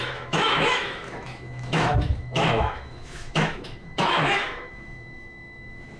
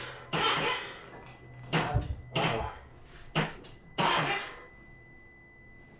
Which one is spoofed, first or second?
first